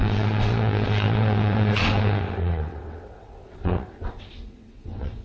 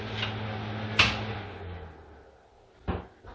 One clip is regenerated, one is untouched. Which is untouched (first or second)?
second